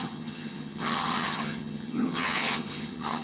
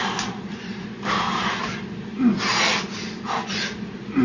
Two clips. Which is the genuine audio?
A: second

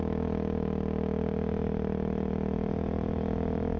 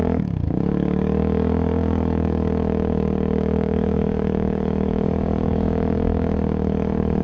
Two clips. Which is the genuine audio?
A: first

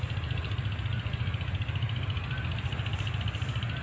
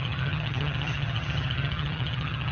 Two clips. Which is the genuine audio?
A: first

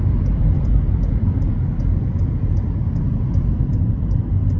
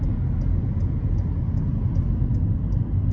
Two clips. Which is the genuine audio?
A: second